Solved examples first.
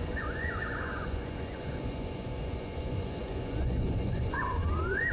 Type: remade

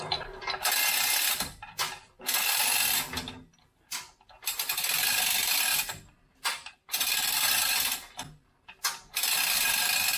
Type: recorded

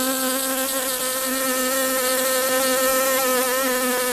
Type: recorded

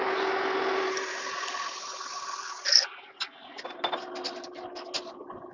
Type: recorded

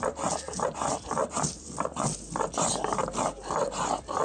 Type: recorded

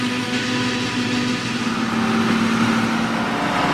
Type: recorded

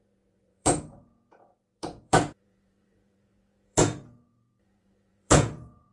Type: remade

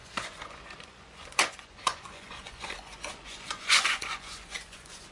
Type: remade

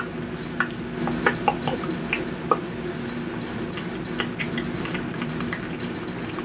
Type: recorded